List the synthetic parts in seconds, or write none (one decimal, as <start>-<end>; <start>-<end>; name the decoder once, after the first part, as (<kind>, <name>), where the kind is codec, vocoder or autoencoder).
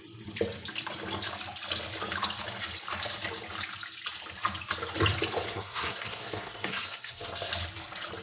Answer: 5.5-7.5 (codec, SNAC)